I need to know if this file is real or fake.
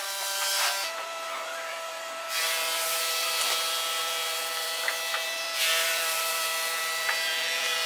fake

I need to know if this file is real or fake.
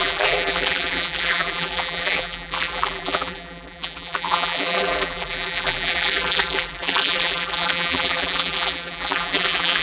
fake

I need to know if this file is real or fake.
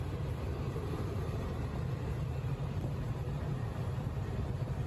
fake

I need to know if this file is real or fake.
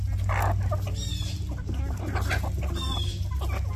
real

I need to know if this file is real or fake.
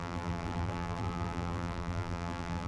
fake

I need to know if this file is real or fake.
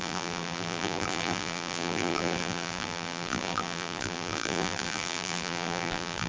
fake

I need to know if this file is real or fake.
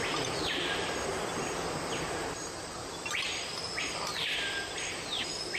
fake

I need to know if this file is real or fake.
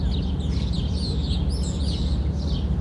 real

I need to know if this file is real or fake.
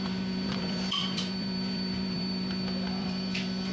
fake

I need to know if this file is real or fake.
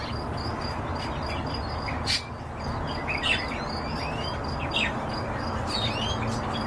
real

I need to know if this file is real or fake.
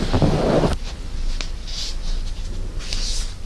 real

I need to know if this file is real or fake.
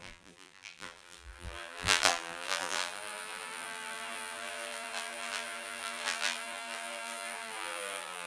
fake